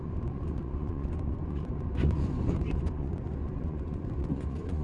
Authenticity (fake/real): fake